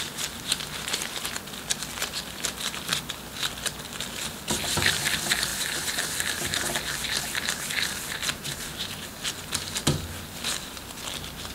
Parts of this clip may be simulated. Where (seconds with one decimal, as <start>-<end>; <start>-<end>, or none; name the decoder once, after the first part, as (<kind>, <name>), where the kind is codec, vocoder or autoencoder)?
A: none